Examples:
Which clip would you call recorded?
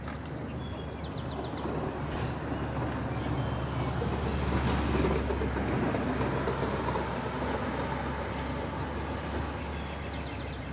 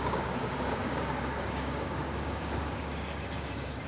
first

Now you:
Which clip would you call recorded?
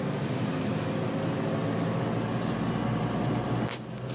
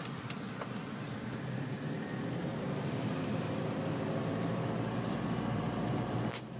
first